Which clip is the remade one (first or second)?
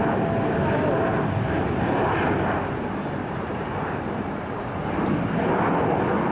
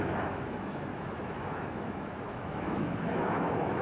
second